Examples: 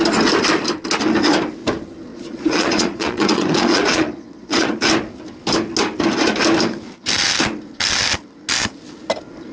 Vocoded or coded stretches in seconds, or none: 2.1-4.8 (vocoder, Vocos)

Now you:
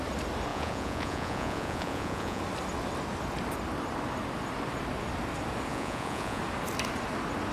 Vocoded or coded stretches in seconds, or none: 0.5-2.4 (vocoder, Vocos); 5.7-6.4

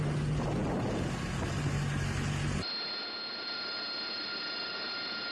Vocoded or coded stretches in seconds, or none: none

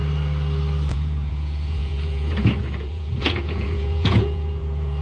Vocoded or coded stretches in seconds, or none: 0.9-5.0 (vocoder, Vocos)

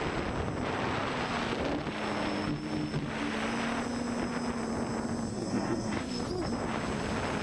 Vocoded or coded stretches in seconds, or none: 5.3-6.1 (codec, SNAC)

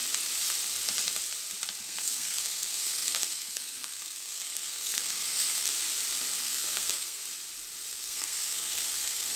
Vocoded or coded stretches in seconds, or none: 1.8-5.7 (codec, SNAC); 6.4-7.2; 7.9-9.4

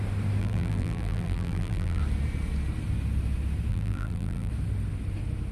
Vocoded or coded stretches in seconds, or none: 0.4-2.0 (vocoder, BigVGAN v2); 3.7-4.5

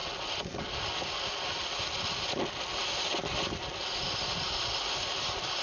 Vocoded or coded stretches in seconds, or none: none